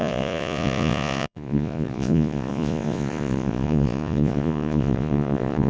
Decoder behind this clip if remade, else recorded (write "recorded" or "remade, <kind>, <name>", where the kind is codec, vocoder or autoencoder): remade, vocoder, Vocos